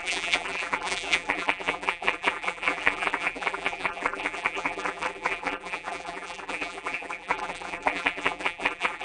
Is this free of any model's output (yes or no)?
no